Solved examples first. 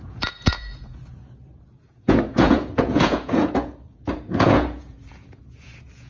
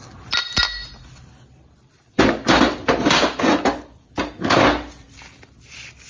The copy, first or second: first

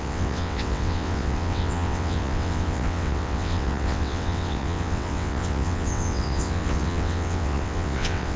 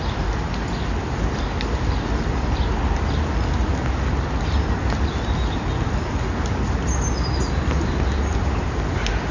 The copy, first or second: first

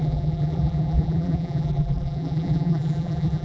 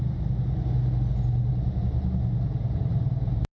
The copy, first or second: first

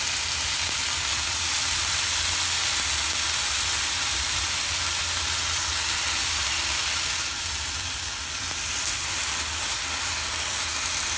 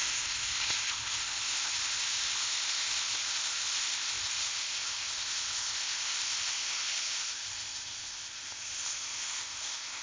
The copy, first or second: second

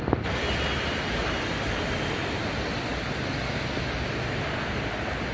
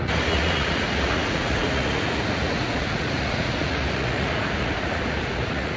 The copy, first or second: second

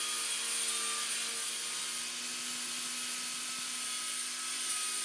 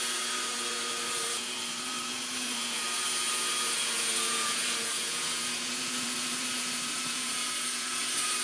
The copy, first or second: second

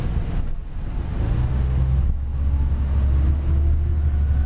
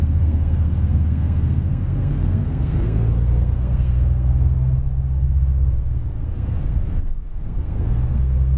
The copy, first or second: second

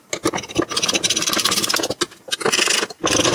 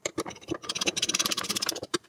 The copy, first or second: second